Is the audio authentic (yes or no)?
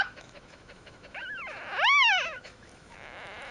no